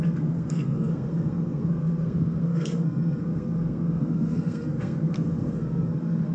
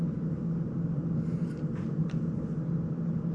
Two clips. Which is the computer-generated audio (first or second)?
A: first